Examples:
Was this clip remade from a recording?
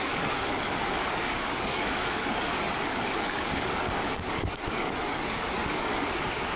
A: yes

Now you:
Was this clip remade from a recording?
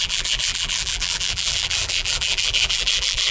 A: yes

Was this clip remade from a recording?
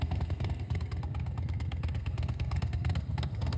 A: yes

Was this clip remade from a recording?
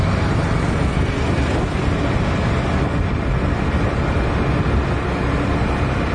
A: no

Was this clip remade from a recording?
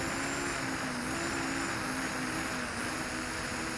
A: no